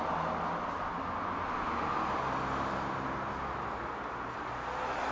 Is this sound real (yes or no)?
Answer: yes